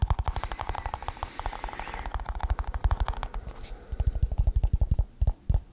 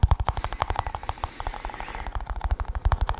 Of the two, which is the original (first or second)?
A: first